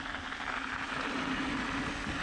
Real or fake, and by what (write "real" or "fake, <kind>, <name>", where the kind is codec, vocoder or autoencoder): real